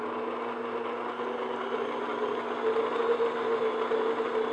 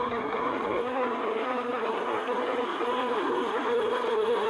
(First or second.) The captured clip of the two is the first